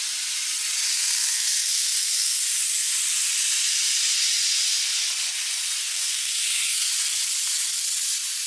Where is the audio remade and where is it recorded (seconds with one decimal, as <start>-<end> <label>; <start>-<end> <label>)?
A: 0.0-0.9 recorded; 0.9-2.4 remade; 2.4-5.8 recorded; 5.8-6.9 remade; 6.9-8.5 recorded